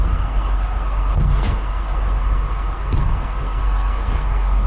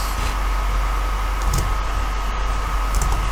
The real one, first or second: second